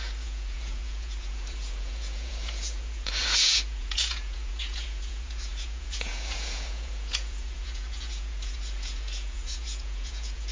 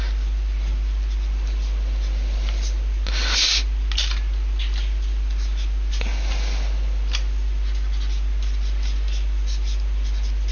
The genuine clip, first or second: second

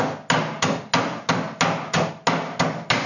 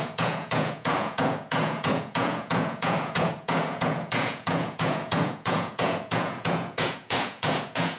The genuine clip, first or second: first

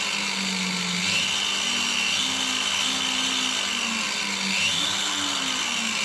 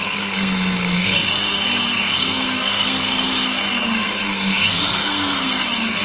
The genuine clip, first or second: first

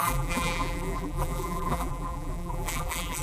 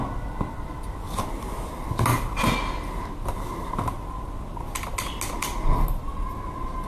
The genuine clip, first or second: second